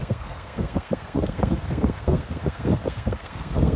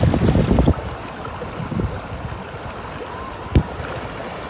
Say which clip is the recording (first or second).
second